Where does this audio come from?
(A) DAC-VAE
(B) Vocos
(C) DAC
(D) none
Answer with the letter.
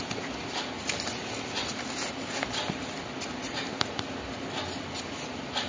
D